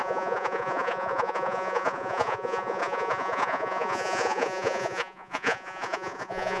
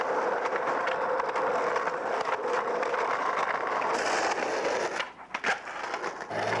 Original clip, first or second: second